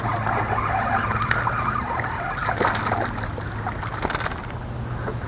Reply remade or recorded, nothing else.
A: recorded